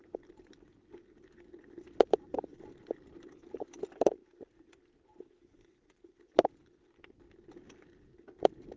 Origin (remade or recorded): recorded